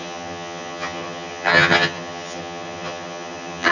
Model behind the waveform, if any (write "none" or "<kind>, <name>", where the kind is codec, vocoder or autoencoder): vocoder, HiFi-GAN